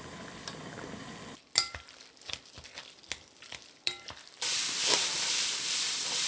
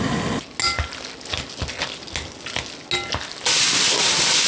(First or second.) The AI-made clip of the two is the first